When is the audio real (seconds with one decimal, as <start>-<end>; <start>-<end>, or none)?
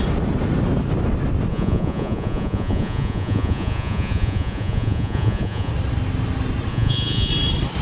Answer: 0.0-1.5; 5.7-6.7; 7.3-7.8